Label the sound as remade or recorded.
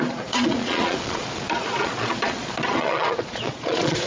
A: remade